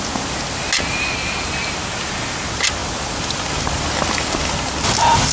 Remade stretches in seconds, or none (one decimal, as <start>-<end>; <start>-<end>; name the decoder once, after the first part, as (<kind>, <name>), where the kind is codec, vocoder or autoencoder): none